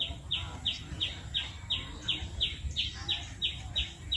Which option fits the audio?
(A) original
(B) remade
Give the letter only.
A